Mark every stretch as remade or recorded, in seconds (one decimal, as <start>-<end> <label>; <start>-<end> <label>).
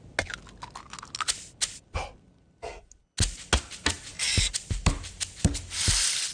0.0-6.3 recorded